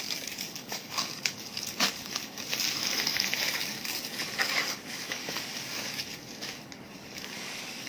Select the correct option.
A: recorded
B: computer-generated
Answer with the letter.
B